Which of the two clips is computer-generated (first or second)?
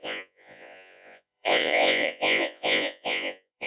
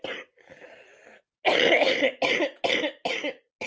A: first